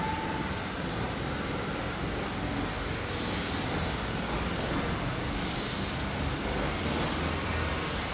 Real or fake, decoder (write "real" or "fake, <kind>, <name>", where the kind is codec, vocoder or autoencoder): real